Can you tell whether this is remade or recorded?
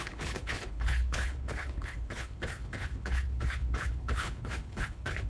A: remade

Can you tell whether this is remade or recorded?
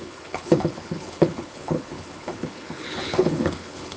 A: remade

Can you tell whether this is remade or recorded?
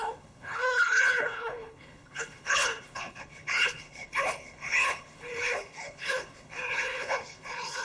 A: remade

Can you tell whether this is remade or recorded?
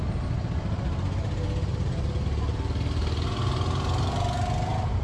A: recorded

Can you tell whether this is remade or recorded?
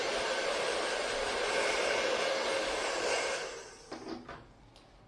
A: recorded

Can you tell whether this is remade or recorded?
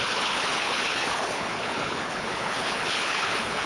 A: remade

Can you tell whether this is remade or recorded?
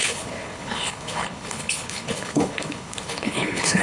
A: remade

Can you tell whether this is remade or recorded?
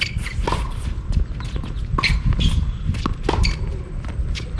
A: recorded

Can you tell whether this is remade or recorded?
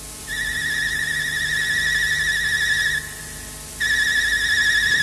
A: recorded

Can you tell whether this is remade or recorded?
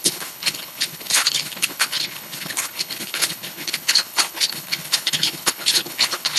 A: remade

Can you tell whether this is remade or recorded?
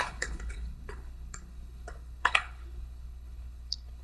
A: remade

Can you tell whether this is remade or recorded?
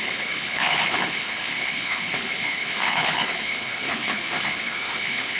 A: remade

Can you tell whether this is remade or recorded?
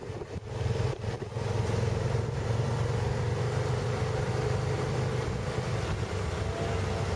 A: recorded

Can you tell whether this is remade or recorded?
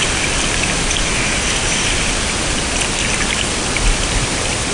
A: recorded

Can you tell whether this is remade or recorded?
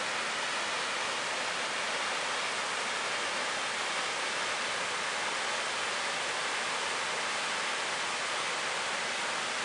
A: recorded